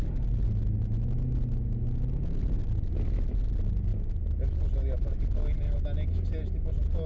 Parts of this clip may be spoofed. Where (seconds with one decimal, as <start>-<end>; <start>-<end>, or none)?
none